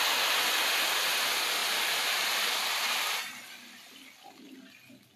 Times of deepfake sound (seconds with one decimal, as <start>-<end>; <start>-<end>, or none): 1.6-3.3